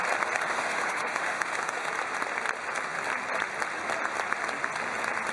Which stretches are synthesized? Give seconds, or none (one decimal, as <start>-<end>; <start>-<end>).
0.5-1.9